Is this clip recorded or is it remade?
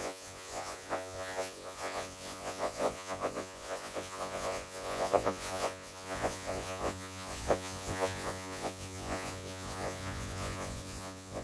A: remade